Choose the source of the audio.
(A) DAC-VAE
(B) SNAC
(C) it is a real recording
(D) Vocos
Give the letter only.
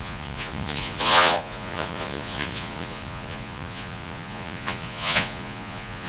D